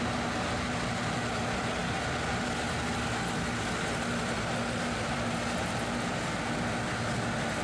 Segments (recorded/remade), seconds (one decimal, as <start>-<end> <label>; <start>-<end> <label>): 0.0-7.6 recorded